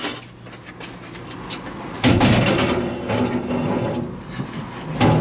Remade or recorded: recorded